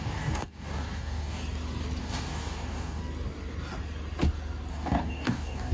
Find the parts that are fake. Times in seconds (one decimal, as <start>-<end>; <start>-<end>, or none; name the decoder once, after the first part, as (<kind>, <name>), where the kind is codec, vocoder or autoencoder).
0.0-1.4 (codec, DAC); 2.0-3.0; 4.7-5.7